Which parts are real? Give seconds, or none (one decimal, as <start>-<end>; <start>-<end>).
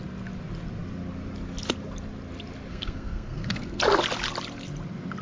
0.0-2.7; 3.8-5.2